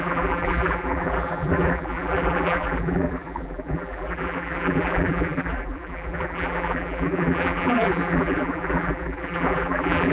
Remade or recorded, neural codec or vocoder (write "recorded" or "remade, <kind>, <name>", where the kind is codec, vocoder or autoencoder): remade, vocoder, BigVGAN v2